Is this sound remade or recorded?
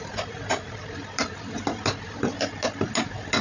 recorded